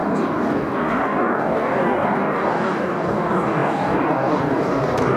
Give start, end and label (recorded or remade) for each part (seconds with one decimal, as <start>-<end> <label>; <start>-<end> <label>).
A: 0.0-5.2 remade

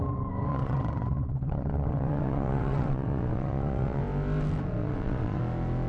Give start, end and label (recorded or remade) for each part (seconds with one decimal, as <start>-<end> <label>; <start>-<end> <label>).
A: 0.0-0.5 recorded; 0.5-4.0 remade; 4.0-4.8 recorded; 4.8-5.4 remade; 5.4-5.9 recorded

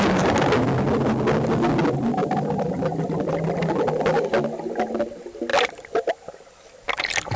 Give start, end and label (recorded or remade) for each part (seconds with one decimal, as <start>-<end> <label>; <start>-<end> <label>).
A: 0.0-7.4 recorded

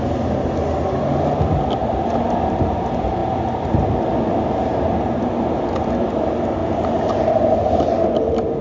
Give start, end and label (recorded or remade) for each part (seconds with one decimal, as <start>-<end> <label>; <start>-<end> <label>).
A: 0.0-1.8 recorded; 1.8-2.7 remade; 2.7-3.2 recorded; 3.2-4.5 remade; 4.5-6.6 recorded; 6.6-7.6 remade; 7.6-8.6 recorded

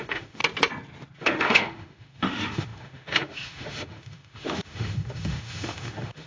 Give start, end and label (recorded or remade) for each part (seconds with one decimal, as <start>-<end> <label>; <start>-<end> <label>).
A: 0.0-0.4 remade; 0.4-1.2 recorded; 1.2-6.3 remade